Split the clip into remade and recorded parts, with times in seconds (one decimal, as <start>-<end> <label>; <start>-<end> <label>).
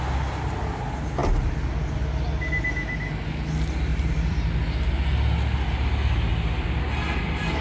0.0-3.9 recorded; 3.9-4.5 remade; 4.5-6.3 recorded; 6.3-6.8 remade; 6.8-7.6 recorded